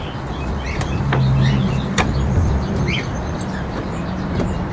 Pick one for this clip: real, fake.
real